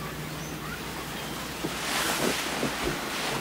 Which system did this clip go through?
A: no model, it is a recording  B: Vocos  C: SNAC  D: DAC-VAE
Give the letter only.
A